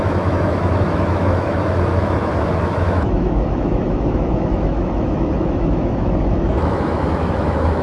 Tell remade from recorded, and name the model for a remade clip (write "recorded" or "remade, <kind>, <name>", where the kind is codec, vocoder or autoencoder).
remade, autoencoder, DAC-VAE